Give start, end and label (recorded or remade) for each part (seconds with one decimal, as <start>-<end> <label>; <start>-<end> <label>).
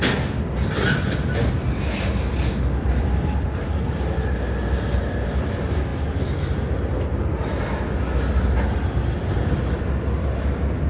0.0-10.9 recorded